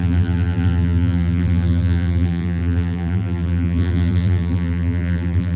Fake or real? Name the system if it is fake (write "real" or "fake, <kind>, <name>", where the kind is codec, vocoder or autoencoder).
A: fake, vocoder, BigVGAN v2